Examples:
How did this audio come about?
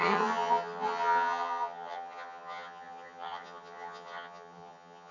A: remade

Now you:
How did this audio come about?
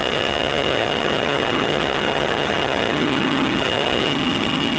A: remade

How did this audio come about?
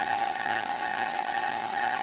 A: remade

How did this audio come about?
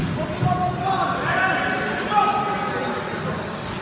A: recorded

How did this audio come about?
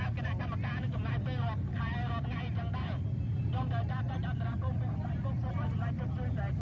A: recorded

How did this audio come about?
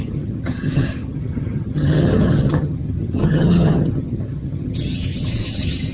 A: remade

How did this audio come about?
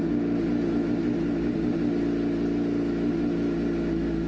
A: recorded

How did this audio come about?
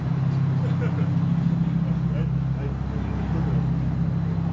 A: recorded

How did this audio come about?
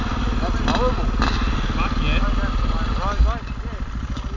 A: recorded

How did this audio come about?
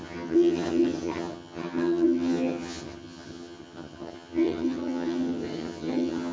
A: remade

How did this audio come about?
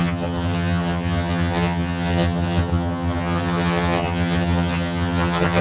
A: remade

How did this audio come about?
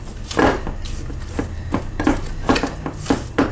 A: recorded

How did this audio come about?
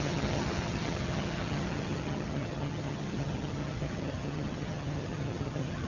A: remade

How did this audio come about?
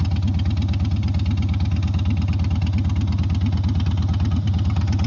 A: recorded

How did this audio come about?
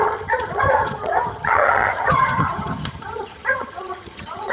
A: remade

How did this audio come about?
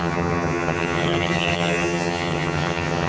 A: remade